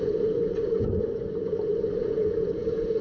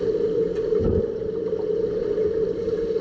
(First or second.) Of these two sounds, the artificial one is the first